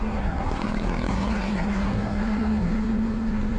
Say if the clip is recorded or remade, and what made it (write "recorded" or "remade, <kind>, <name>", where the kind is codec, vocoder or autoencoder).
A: remade, codec, SNAC